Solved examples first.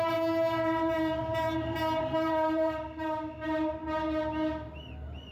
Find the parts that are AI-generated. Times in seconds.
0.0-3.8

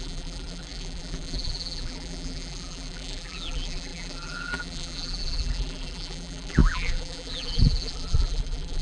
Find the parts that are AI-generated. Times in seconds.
0.0-8.8

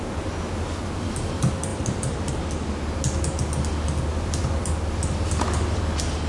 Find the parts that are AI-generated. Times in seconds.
1.7-2.3; 4.1-4.7